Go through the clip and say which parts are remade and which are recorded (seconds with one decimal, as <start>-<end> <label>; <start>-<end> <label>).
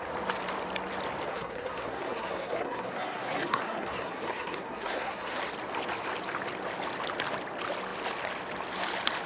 0.0-1.3 recorded; 1.3-5.4 remade; 5.4-9.3 recorded